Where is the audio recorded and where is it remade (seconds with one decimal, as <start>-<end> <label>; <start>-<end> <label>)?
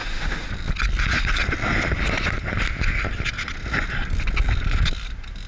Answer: 0.0-0.5 remade; 0.5-5.5 recorded